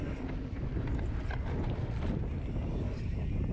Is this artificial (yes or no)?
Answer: no